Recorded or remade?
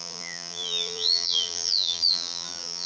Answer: remade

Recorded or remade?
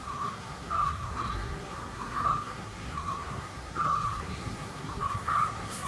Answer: remade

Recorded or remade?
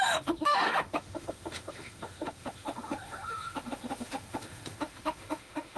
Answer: remade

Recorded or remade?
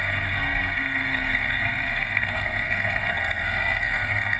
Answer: remade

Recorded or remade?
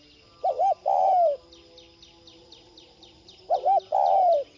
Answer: recorded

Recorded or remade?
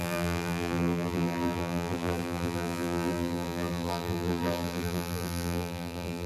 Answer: remade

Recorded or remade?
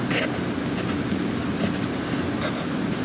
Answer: recorded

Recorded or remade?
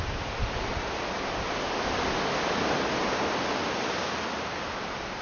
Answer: recorded